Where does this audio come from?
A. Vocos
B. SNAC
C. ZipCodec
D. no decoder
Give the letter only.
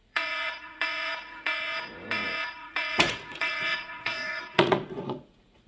A